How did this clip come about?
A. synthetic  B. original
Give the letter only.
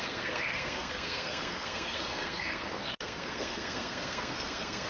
A